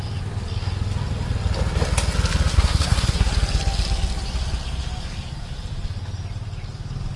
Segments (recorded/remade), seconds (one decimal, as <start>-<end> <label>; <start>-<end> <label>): 0.0-2.5 recorded; 2.5-3.3 remade; 3.3-7.2 recorded